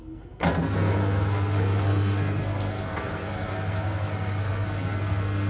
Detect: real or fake fake